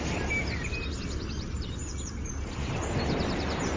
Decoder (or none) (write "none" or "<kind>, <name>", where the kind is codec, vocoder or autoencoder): none